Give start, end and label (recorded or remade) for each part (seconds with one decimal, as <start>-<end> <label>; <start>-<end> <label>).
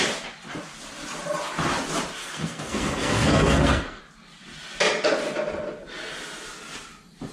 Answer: 0.0-2.2 recorded; 2.2-4.0 remade; 4.0-7.3 recorded